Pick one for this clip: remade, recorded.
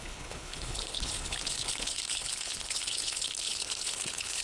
remade